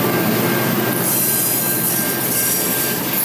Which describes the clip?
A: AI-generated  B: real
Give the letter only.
B